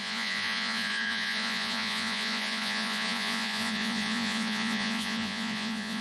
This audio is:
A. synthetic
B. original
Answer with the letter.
A